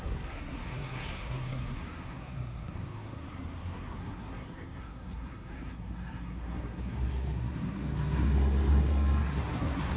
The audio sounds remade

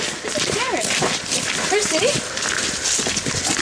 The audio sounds recorded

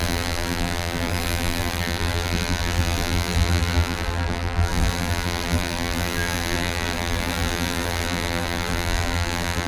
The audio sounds remade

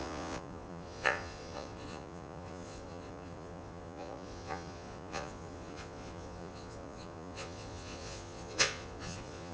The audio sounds remade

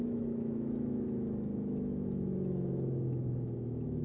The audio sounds remade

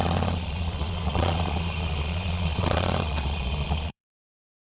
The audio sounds remade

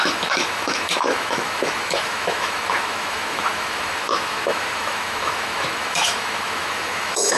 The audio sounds remade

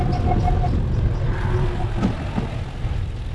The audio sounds recorded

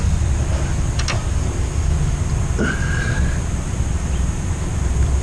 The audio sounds recorded